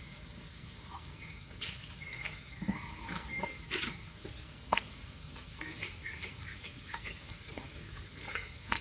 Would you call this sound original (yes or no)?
no